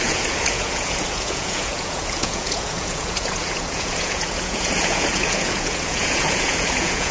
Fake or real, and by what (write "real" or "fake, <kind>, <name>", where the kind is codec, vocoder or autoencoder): fake, vocoder, Vocos